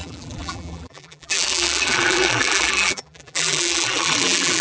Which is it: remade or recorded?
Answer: remade